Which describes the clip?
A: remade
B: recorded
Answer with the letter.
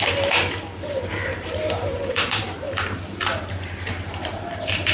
A